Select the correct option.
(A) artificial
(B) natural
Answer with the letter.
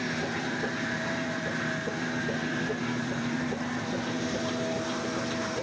A